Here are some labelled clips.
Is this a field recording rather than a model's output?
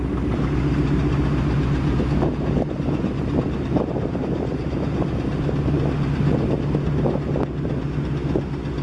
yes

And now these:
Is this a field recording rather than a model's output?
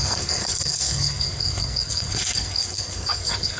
no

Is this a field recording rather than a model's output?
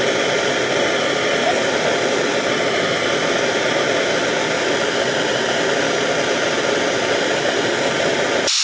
yes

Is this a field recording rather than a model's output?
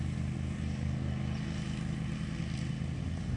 yes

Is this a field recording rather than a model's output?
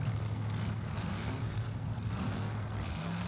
no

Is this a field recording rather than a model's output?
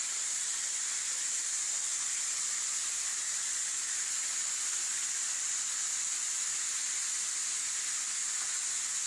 yes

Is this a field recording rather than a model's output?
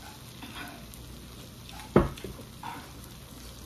yes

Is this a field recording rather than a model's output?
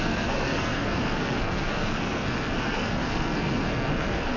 no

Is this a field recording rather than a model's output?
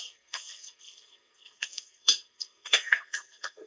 no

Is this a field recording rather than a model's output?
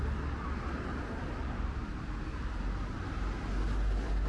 yes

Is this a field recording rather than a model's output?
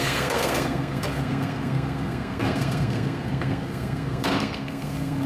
no